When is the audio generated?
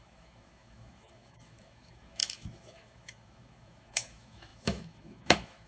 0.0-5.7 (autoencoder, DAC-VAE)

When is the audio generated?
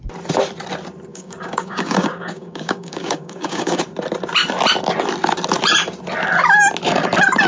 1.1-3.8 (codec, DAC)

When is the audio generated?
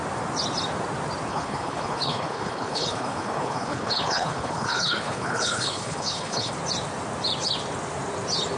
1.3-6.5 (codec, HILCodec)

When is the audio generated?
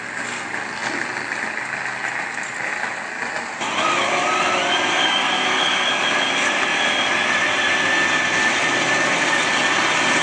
4.9-5.9 (codec, SNAC)